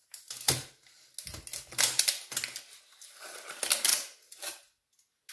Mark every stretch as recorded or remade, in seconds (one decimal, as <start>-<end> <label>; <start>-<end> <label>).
0.0-5.3 recorded